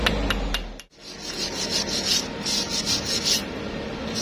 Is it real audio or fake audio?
real